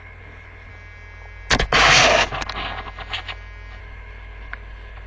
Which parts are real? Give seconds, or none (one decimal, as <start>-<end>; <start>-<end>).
0.7-3.8